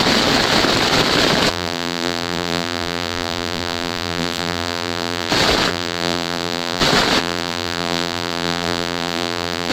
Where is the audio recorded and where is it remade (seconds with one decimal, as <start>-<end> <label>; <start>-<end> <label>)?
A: 0.0-1.5 recorded; 1.5-5.3 remade; 5.3-5.7 recorded; 5.7-6.8 remade; 6.8-7.2 recorded; 7.2-9.7 remade